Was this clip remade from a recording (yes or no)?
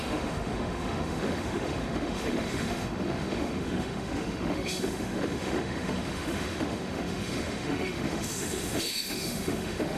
yes